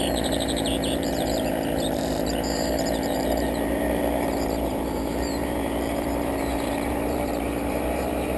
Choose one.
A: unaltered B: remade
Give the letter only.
B